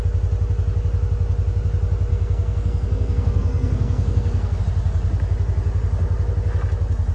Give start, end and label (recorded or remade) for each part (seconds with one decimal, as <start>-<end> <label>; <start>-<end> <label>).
0.0-2.1 recorded; 2.1-4.6 remade; 4.6-7.1 recorded